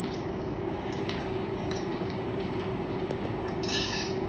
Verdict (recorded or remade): remade